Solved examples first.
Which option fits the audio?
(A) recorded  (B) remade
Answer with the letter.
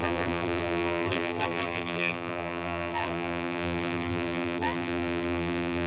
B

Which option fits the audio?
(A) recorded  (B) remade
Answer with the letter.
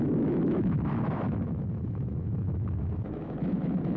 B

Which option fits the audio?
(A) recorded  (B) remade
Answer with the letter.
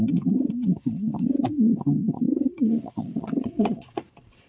B